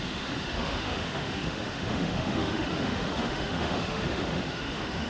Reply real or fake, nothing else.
fake